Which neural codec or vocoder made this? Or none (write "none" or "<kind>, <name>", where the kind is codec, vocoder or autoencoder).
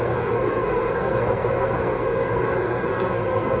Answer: codec, SNAC